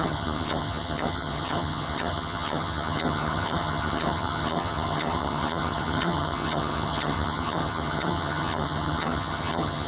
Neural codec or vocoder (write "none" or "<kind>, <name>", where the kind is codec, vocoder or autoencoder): vocoder, HiFi-GAN